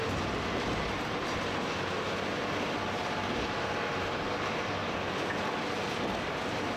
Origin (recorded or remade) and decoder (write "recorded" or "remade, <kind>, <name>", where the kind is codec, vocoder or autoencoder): recorded